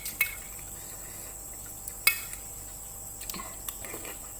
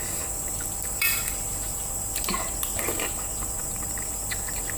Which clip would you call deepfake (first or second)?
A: second